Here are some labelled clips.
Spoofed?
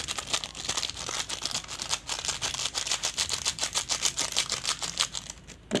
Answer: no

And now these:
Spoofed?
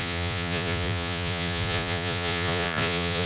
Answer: yes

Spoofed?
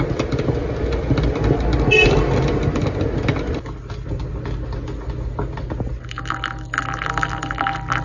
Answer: no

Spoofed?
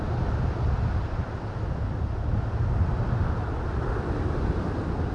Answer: no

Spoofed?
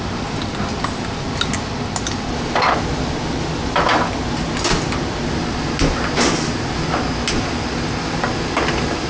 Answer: no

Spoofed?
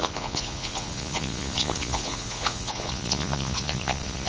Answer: yes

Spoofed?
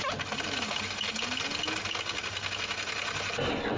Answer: no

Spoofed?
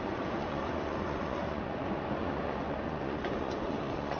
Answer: yes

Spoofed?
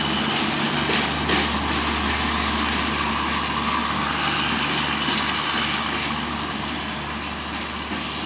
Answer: no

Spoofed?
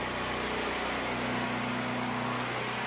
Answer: no